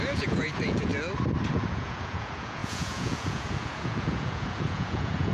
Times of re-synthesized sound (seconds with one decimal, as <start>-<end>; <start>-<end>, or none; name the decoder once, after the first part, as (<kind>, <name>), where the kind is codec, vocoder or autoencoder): 0.0-0.9 (vocoder, Vocos); 1.5-5.3